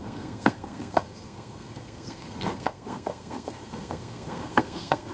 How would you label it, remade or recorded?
remade